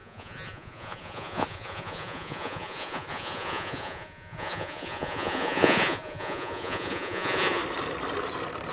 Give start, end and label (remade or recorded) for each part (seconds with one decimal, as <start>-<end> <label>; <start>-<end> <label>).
0.0-7.6 remade; 7.6-8.7 recorded